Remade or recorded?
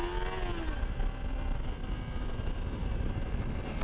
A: recorded